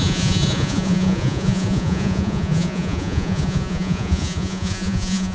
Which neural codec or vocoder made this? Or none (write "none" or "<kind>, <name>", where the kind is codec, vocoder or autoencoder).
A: vocoder, Vocos